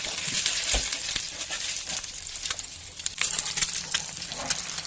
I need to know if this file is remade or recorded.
recorded